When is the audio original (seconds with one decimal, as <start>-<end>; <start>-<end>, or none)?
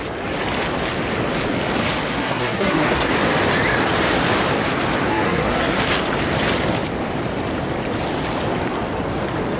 0.0-2.1; 3.1-5.1; 5.8-9.6